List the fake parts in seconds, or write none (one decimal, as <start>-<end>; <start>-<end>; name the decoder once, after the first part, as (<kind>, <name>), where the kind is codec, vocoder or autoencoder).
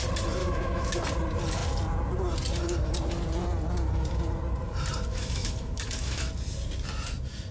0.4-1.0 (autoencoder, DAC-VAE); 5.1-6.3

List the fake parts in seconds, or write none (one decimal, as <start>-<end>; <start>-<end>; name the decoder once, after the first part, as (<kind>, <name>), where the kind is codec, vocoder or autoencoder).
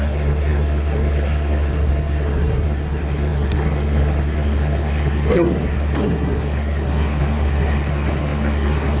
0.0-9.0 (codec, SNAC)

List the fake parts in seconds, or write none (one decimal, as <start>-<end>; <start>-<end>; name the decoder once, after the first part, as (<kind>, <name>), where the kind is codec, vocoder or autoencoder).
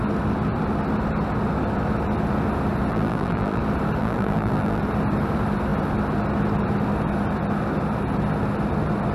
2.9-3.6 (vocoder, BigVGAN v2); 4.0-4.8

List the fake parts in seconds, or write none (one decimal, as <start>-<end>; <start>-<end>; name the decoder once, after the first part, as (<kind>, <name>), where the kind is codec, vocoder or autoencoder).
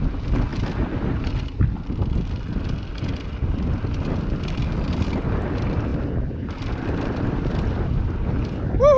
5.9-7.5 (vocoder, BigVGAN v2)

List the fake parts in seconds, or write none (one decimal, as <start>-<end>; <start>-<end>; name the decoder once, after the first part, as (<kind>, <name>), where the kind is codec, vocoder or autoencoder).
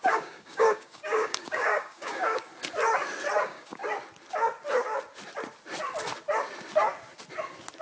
0.0-2.5 (codec, DAC); 3.4-3.8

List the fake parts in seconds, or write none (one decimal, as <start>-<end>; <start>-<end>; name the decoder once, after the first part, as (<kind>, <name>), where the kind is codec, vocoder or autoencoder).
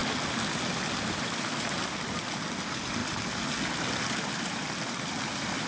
none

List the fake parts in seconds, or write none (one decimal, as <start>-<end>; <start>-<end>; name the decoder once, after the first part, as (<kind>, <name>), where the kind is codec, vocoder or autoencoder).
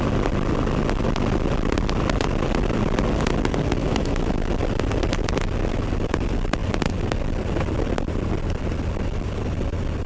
3.8-4.5 (autoencoder, DAC-VAE)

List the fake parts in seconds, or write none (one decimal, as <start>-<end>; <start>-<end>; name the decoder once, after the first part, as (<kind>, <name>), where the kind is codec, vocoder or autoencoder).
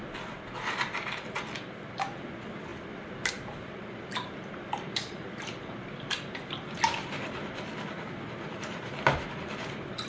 none